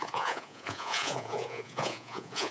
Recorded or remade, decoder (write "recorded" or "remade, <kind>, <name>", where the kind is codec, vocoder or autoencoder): remade, vocoder, Vocos